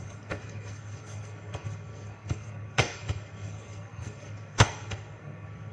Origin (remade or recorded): remade